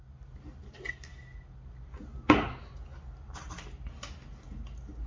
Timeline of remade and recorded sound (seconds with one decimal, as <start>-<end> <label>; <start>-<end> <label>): 0.0-5.1 recorded